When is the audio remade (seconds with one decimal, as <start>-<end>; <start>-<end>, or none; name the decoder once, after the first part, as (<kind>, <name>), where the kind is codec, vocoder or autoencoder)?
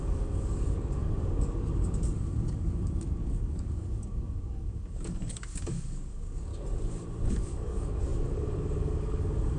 0.0-6.5 (codec, DAC); 7.3-9.6